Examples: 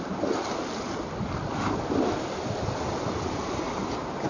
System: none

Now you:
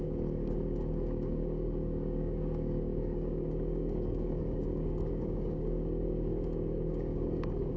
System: codec, DAC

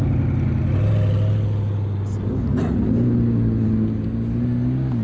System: none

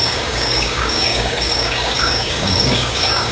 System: codec, DAC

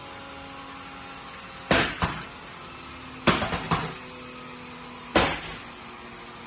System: none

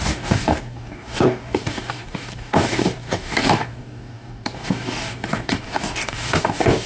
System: codec, DAC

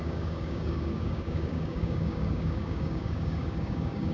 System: codec, DAC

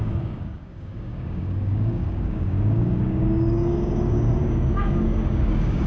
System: codec, DAC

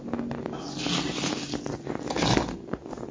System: none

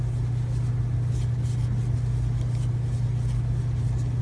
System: none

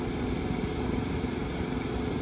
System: none